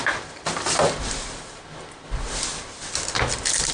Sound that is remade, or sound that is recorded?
recorded